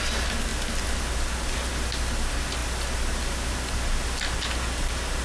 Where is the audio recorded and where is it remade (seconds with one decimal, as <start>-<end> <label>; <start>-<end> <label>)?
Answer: 0.0-5.2 recorded